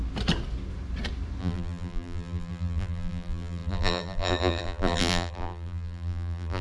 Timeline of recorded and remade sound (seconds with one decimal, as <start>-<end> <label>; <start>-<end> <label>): 0.0-1.4 recorded; 1.4-6.6 remade